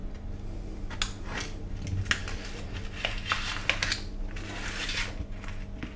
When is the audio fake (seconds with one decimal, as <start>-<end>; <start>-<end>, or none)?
none